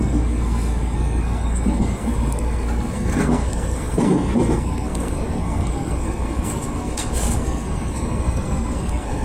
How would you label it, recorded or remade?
remade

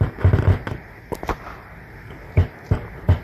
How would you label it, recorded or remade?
remade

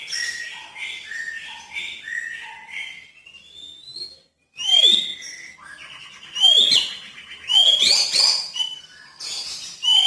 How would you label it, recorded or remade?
recorded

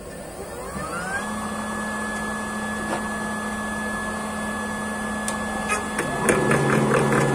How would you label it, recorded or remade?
recorded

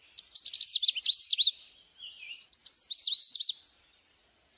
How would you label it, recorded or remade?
recorded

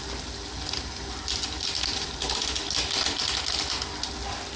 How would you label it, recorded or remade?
recorded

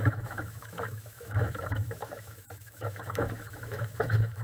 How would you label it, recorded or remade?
remade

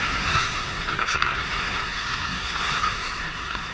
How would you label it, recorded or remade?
remade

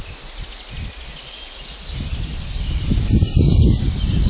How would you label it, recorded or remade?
recorded